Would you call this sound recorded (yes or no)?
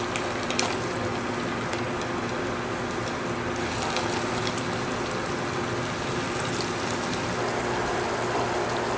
yes